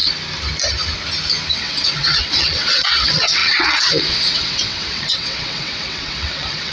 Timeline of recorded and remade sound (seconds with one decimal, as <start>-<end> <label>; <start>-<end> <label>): 0.0-1.5 recorded; 1.5-6.7 remade